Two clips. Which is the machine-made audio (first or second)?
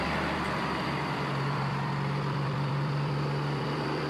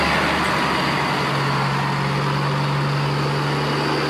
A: first